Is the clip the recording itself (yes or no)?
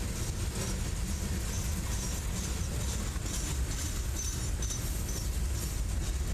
yes